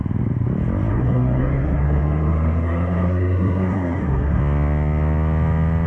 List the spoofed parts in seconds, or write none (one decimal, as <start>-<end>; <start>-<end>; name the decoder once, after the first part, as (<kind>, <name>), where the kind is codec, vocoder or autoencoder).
0.9-4.4 (codec, SNAC)